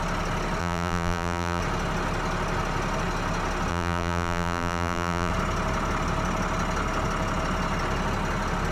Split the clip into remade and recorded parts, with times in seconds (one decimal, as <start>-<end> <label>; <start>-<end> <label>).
0.0-0.6 recorded; 0.6-1.6 remade; 1.6-3.7 recorded; 3.7-5.3 remade; 5.3-8.7 recorded